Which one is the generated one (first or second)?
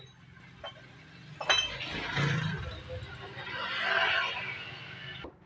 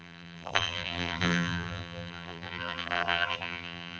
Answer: second